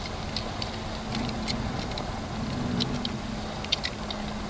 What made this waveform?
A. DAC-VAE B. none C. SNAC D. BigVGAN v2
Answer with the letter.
B